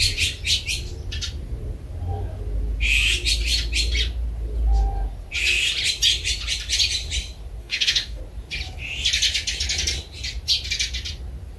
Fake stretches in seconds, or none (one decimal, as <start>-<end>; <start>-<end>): 7.6-8.2